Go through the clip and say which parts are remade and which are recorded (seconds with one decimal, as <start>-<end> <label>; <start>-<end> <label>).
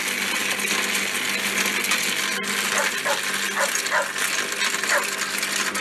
0.0-5.8 recorded